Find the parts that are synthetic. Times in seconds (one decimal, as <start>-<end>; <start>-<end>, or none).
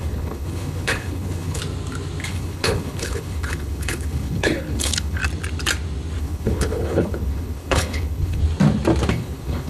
0.0-1.6; 2.3-5.2; 6.2-8.4; 9.1-9.7